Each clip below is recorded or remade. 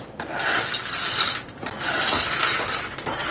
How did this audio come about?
recorded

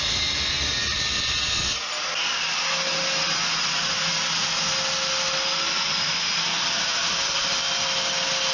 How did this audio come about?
recorded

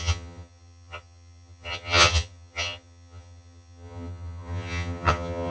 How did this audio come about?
remade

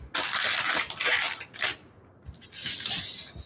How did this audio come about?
recorded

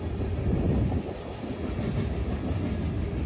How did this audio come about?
recorded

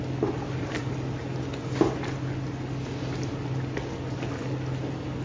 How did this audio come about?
recorded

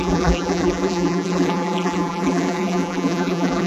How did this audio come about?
remade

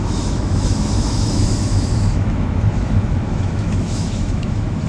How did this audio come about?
remade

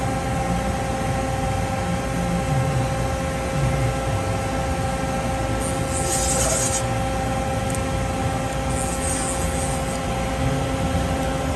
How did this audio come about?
recorded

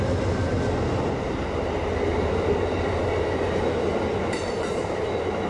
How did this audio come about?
recorded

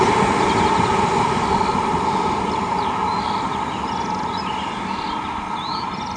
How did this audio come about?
recorded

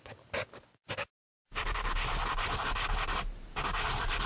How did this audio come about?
recorded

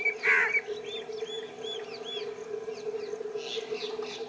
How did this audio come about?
recorded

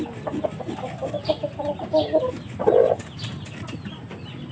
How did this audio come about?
recorded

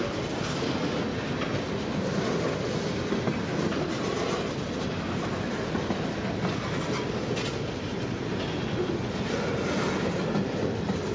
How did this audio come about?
recorded